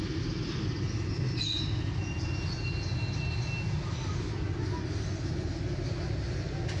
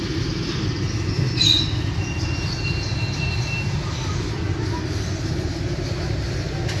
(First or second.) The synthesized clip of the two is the second